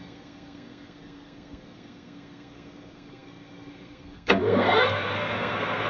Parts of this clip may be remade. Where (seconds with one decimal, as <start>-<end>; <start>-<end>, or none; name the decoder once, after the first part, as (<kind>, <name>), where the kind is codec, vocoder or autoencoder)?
0.0-5.9 (codec, SNAC)